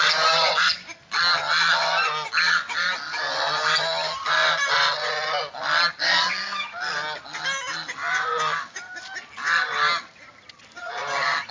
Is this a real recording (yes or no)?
yes